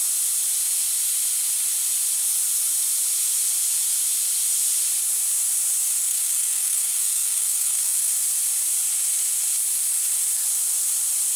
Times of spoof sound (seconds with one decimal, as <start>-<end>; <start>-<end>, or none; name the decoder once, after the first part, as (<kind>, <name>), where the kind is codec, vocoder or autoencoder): 6.1-8.1 (codec, SNAC)